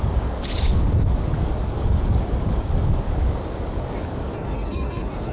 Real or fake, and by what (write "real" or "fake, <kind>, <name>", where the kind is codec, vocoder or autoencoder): fake, codec, DAC